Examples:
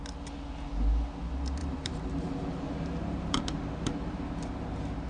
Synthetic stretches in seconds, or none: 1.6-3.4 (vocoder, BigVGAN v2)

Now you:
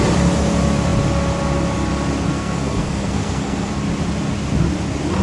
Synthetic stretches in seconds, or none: 2.3-3.7 (codec, SNAC)

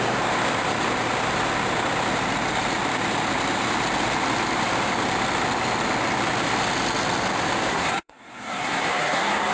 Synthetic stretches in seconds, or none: 7.7-9.5 (codec, SNAC)

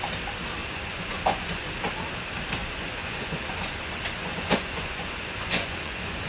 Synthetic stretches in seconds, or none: 0.6-1.7 (vocoder, Vocos); 2.6-6.3

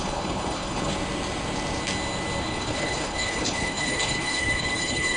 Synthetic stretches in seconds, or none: 0.0-0.9 (codec, HILCodec); 2.4-5.2